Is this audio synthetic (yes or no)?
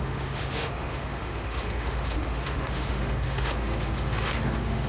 yes